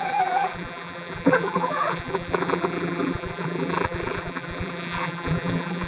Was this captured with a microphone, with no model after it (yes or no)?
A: no